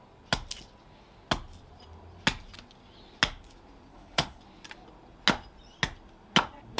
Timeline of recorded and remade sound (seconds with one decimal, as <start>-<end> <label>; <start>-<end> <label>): 0.0-3.9 recorded; 3.9-4.4 remade; 4.4-6.8 recorded